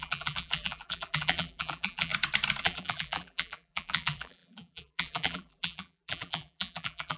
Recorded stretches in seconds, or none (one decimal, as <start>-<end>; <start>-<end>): 2.1-2.6

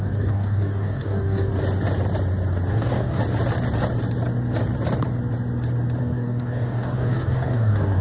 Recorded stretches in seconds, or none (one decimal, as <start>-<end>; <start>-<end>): 1.5-2.7; 3.2-6.0

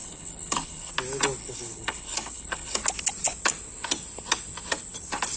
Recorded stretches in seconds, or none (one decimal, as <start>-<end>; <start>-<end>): 0.9-1.4; 2.8-5.4

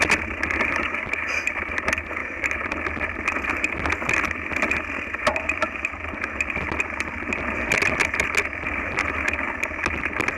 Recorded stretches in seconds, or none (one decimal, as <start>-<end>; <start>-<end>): 0.0-10.4